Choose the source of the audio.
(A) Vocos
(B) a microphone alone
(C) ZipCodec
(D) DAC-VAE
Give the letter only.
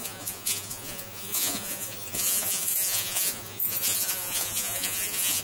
A